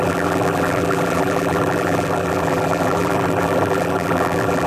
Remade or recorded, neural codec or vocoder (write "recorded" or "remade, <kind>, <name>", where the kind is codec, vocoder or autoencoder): remade, vocoder, BigVGAN v2